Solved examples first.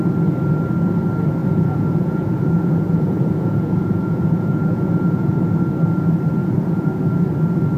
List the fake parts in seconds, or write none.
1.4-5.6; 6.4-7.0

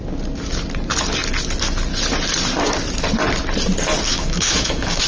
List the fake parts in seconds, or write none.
4.1-5.1

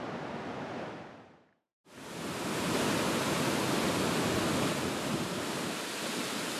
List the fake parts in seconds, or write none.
none

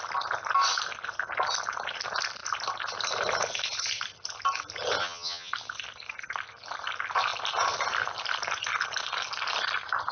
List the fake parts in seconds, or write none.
5.0-5.5

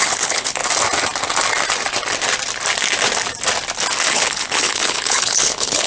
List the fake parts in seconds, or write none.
0.0-0.6; 4.1-5.9